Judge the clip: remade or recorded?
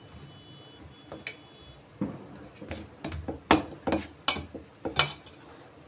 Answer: recorded